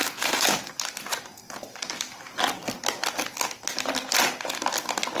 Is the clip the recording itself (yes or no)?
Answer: yes